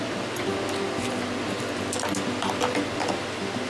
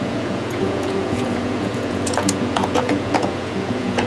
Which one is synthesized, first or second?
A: second